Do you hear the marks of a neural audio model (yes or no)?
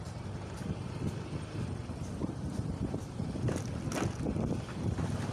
no